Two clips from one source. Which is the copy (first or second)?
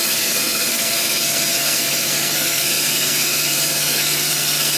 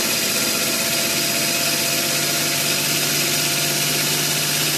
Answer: first